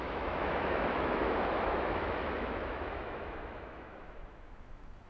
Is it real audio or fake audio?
fake